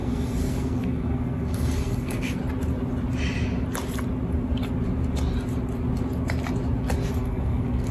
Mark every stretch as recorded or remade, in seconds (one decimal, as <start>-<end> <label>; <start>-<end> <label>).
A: 0.0-2.4 remade; 2.4-7.1 recorded; 7.1-7.9 remade